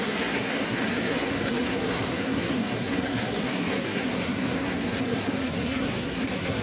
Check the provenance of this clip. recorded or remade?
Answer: remade